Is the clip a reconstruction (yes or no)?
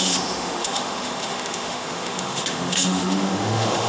yes